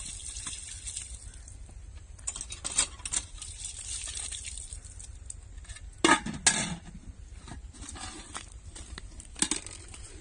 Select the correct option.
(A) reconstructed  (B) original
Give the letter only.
B